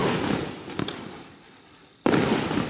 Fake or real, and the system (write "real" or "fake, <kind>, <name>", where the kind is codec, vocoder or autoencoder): real